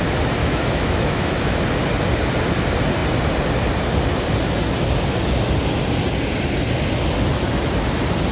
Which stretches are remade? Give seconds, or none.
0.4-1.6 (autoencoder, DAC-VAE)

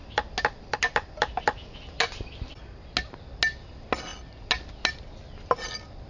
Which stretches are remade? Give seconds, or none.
none

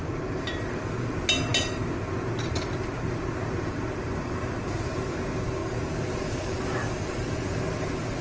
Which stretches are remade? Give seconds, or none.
none

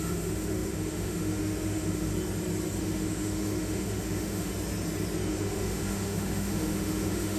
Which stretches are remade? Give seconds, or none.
0.0-2.1 (autoencoder, DAC-VAE); 2.8-4.5; 5.3-7.4

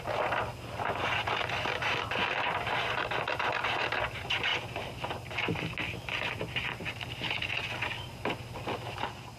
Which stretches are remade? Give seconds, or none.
none

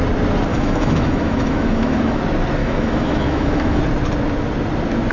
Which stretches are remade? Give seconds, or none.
0.5-2.2 (autoencoder, DAC-VAE); 2.6-3.8

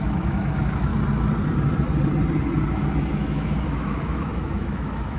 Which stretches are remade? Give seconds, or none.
0.0-0.9 (autoencoder, DAC-VAE); 3.1-5.2

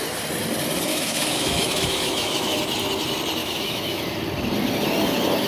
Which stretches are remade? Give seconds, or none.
0.9-2.6 (autoencoder, DAC-VAE); 3.4-4.0